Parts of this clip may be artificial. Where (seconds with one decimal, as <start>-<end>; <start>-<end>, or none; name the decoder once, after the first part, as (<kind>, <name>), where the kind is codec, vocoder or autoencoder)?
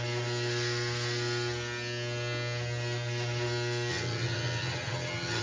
3.9-5.4 (vocoder, HiFi-GAN)